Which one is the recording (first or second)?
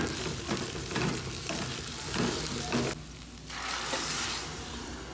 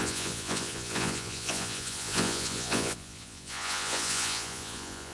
first